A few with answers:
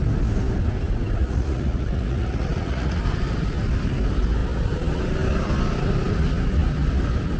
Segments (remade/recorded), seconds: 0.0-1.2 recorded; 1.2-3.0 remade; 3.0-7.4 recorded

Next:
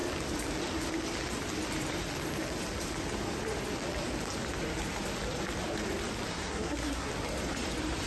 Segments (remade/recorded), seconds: 0.0-6.3 recorded; 6.3-7.1 remade; 7.1-8.1 recorded

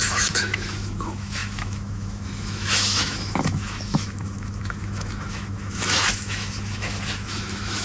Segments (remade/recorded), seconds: 0.0-7.8 remade

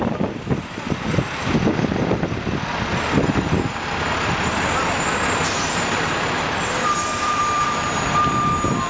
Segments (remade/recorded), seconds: 0.0-2.9 remade; 2.9-3.7 recorded; 3.7-8.9 remade

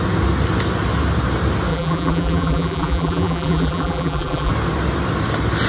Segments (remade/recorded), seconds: 0.0-1.7 recorded; 1.7-4.5 remade; 4.5-5.7 recorded

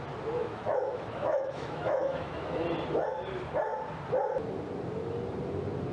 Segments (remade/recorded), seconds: 0.0-0.4 recorded; 0.4-2.6 remade; 2.6-5.9 recorded